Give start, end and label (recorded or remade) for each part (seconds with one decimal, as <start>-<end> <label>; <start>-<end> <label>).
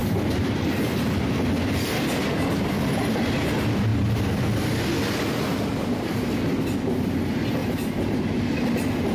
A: 0.0-9.1 recorded